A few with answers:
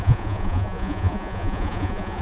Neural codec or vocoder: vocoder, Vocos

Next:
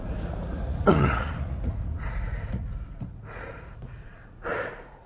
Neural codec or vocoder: vocoder, Vocos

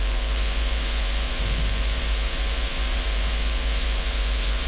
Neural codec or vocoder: vocoder, Vocos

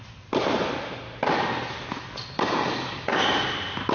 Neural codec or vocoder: none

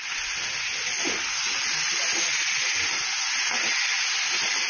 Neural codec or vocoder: none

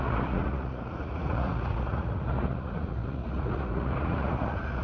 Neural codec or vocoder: vocoder, Vocos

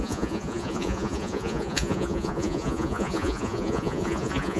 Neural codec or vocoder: vocoder, Vocos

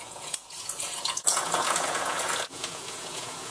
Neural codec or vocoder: vocoder, Vocos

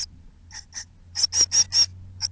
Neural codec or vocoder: none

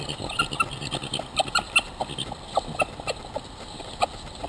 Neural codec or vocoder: none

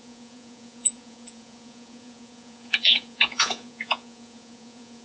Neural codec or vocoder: vocoder, Vocos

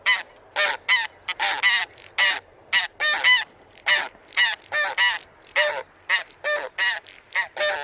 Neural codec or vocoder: none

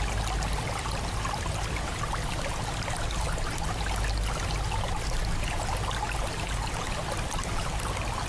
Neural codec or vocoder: none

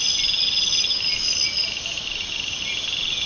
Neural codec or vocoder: none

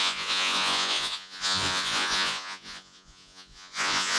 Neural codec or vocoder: vocoder, Vocos